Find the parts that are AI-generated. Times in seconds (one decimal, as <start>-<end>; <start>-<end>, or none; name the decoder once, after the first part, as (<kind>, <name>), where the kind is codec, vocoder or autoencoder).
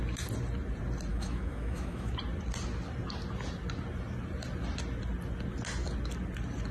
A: 1.1-2.1 (autoencoder, DAC-VAE)